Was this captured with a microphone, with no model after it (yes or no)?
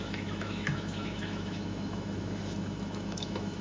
no